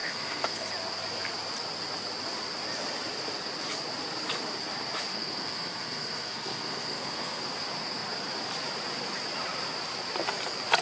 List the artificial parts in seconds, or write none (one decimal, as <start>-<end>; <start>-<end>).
0.0-0.7; 5.1-7.4